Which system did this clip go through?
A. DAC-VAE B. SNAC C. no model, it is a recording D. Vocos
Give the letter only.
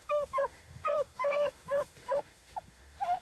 A